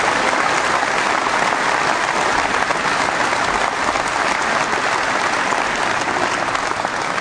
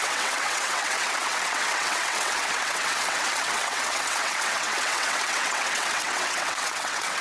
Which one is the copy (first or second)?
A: second